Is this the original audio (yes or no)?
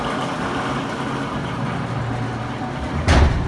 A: yes